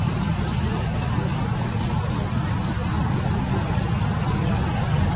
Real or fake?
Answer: fake